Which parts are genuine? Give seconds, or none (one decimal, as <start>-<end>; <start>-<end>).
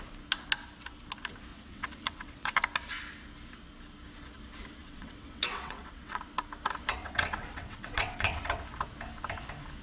0.0-1.5; 2.5-4.8; 6.2-7.0; 8.6-9.8